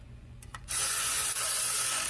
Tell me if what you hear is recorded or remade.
remade